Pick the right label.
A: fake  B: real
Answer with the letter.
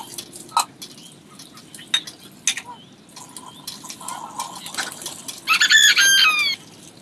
B